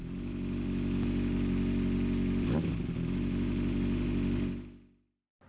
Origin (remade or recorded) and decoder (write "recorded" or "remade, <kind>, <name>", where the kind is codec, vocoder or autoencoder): recorded